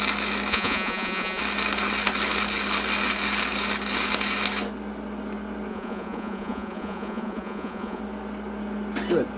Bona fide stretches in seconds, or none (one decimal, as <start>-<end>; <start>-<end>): 0.0-0.5; 1.4-5.7; 8.0-9.4